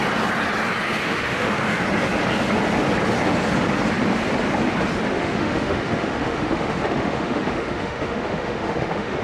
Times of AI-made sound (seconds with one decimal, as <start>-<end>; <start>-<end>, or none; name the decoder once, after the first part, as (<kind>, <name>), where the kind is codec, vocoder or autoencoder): 1.0-1.8 (autoencoder, DAC-VAE); 5.1-9.2